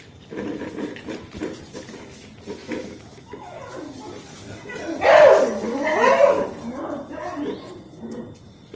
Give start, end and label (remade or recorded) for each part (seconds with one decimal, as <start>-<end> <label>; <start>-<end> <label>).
0.0-2.6 recorded; 2.6-3.6 remade; 3.6-8.8 recorded